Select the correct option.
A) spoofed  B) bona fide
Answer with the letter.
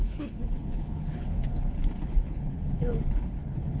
A